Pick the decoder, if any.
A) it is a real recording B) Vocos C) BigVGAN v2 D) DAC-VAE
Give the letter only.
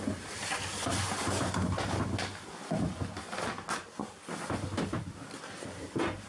A